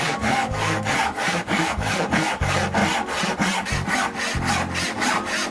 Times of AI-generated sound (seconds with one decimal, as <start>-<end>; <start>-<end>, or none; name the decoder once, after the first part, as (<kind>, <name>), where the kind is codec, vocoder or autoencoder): 0.0-2.8 (codec, DAC)